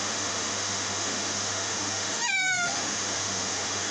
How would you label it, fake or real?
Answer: fake